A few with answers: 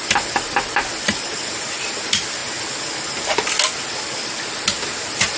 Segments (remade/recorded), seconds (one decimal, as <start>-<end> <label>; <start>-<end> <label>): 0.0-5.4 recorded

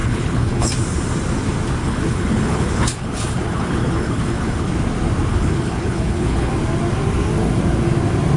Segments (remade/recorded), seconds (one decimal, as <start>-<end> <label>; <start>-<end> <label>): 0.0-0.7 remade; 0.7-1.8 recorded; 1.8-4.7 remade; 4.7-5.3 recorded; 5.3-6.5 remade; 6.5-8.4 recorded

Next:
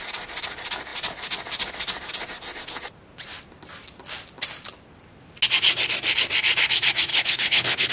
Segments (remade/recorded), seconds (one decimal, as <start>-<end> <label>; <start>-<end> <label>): 0.0-7.1 recorded; 7.1-7.9 remade